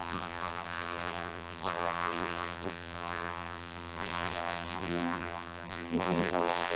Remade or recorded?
remade